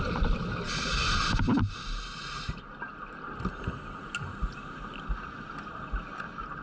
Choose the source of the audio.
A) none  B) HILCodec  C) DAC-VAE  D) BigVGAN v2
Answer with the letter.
A